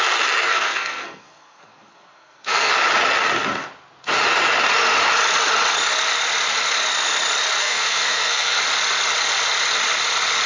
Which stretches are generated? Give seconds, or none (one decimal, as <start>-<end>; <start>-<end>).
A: 0.5-2.7; 7.6-8.6